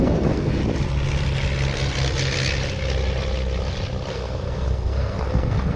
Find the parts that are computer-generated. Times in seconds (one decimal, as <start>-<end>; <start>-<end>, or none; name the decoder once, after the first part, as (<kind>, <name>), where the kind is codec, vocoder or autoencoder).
0.0-0.6 (codec, SNAC); 4.1-5.8